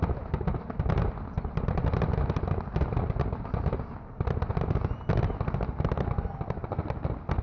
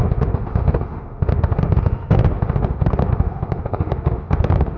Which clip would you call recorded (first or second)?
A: first